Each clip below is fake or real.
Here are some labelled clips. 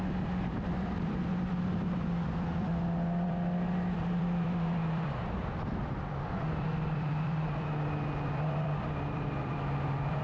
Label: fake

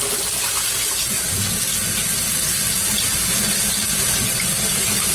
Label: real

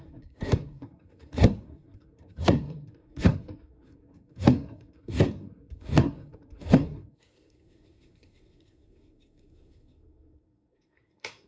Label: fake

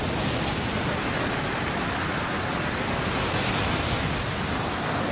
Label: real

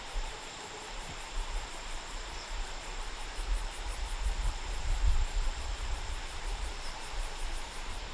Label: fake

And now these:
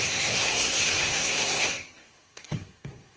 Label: fake